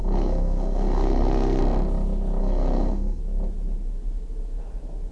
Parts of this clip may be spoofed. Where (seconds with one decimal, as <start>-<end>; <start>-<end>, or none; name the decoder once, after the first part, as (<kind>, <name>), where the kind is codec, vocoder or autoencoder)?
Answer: 0.0-1.6 (codec, SNAC); 2.4-3.2